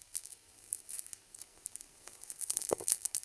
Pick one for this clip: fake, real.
fake